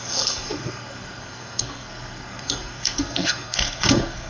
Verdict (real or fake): fake